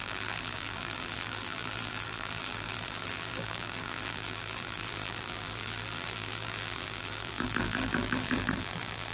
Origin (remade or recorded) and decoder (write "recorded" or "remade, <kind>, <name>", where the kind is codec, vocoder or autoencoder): remade, vocoder, BigVGAN v2